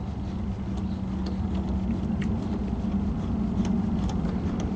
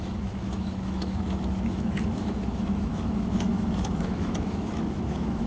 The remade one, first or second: second